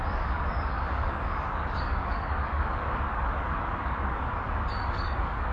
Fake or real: fake